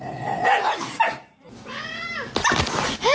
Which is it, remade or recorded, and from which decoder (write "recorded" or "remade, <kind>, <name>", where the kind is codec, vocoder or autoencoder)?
recorded